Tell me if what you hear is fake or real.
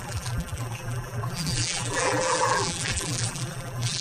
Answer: fake